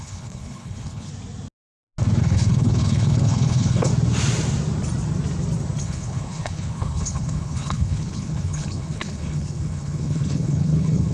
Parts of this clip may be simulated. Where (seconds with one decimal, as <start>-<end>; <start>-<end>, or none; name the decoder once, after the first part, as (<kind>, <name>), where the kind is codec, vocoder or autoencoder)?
0.0-1.1 (codec, HILCodec); 2.2-3.9; 5.8-11.1